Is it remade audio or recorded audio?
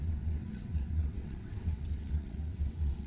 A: remade